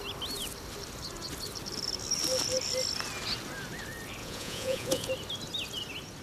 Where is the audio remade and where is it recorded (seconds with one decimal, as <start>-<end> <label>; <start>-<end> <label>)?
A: 0.0-4.2 recorded; 4.2-5.1 remade; 5.1-6.2 recorded